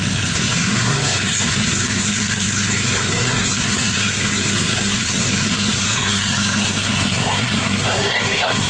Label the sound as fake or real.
fake